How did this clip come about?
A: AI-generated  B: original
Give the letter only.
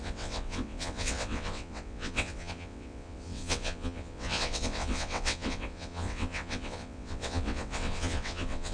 A